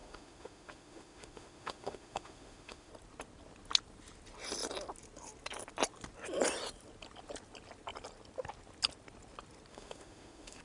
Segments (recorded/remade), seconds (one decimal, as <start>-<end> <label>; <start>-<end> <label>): 0.0-2.9 remade; 2.9-9.7 recorded; 9.7-10.6 remade